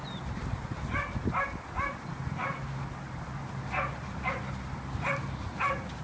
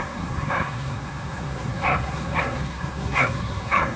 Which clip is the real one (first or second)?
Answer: first